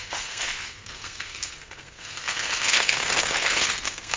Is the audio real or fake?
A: fake